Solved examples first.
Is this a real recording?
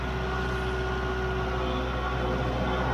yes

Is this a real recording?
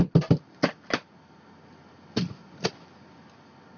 yes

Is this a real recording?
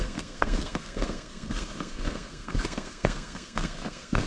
no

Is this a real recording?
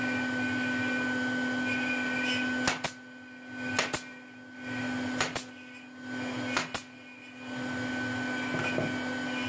yes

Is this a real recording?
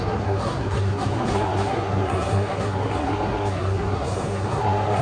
no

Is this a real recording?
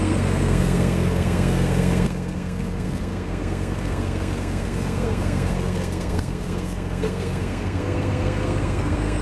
no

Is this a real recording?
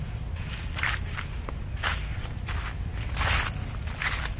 yes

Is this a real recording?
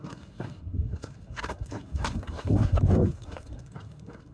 no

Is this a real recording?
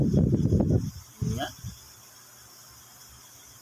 yes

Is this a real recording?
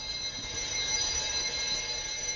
yes